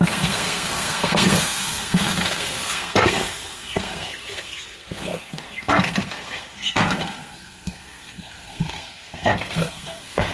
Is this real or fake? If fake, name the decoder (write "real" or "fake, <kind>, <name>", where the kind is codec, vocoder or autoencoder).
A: fake, codec, SNAC